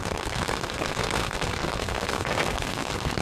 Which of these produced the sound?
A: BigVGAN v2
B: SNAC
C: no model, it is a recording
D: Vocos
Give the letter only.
B